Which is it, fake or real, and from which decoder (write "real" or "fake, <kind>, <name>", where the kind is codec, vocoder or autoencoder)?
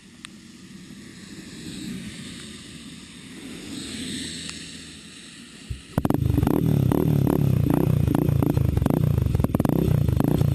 real